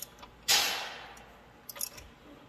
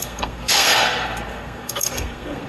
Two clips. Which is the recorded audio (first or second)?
first